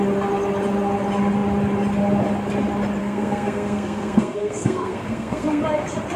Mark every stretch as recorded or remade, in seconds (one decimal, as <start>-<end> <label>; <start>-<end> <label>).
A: 0.0-3.0 recorded; 3.0-5.6 remade; 5.6-6.2 recorded